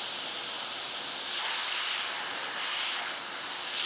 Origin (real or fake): real